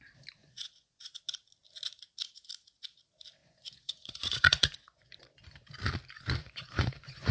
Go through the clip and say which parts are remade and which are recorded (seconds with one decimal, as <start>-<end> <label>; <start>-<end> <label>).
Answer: 0.0-0.4 recorded; 0.4-1.2 remade; 1.2-3.4 recorded; 3.4-5.5 remade; 5.5-6.4 recorded; 6.4-7.3 remade